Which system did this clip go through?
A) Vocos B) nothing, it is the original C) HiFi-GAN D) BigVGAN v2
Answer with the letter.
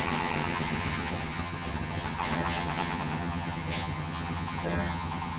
C